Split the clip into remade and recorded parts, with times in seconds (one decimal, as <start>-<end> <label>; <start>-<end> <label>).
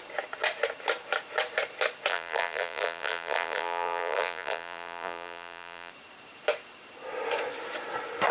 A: 0.0-2.1 recorded; 2.1-5.9 remade; 5.9-8.3 recorded